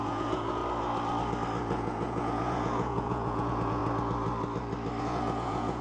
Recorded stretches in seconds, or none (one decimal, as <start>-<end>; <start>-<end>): 0.6-1.6; 3.8-5.0

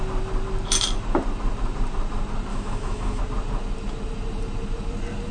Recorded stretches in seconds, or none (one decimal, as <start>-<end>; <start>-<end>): 0.0-2.5; 3.2-5.3

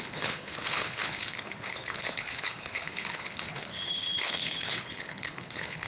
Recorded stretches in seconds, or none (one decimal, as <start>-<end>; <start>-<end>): none

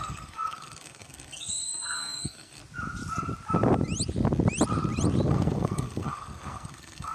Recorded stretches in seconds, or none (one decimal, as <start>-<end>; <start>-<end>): 2.6-5.3

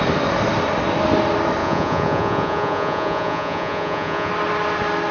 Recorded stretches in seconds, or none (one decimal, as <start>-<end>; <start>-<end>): 0.0-1.6; 4.3-5.1

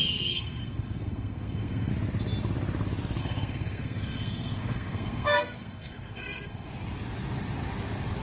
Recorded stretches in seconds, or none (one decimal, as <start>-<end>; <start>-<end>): 1.9-3.2; 6.7-8.2

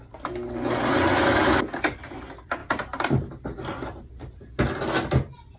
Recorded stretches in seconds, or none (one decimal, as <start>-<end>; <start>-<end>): 0.0-5.6